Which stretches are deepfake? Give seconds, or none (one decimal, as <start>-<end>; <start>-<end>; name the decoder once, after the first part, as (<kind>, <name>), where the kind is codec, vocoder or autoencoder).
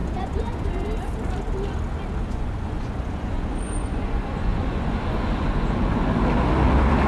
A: 0.0-0.7 (vocoder, Vocos); 2.2-6.1